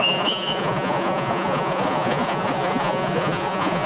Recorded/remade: remade